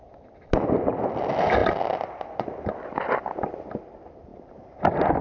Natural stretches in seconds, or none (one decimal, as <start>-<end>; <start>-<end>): 0.0-5.2